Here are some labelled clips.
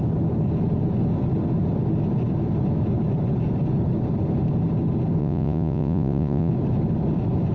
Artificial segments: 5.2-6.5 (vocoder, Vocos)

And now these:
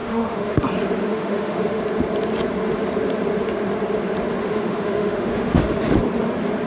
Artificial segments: 0.0-0.6 (autoencoder, DAC-VAE); 1.0-1.8; 4.4-5.6

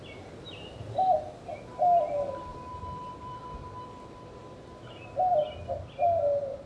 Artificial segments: 2.5-3.4 (vocoder, BigVGAN v2); 4.4-5.3

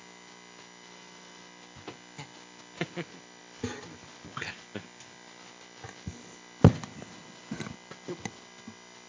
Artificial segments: none